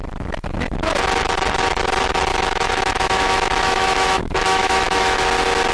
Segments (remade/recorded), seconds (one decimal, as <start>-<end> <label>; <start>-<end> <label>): 0.0-2.3 recorded; 2.3-5.2 remade; 5.2-5.7 recorded